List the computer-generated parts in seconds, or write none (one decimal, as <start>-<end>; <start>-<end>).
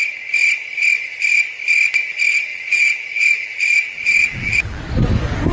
2.5-4.8